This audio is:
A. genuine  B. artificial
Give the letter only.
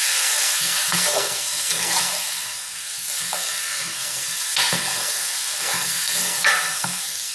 B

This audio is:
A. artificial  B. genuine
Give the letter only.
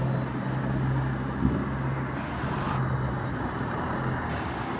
B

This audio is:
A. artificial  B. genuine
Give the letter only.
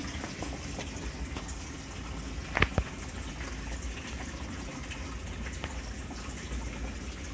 B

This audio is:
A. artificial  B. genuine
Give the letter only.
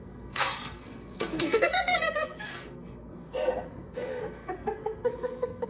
A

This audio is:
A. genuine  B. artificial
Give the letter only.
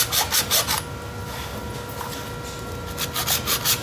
A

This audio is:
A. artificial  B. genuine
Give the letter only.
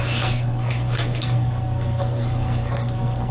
A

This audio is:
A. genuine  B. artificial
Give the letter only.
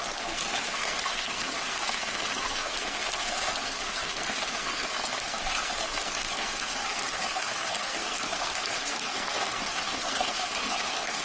B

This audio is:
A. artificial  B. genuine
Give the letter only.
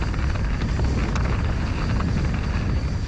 B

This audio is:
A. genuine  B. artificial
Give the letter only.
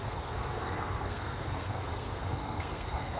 B